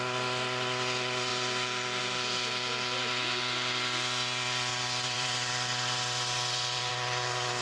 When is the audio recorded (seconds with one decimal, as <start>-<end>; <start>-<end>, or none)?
0.0-4.7; 6.9-7.6